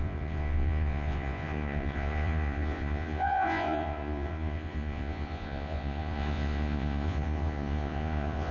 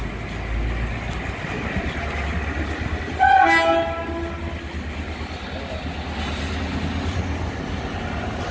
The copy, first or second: first